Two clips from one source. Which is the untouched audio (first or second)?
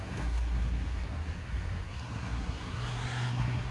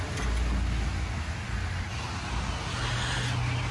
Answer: second